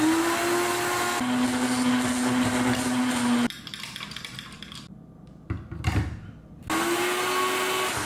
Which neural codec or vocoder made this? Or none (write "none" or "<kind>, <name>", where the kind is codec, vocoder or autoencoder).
none